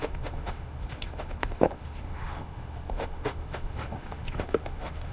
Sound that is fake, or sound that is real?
fake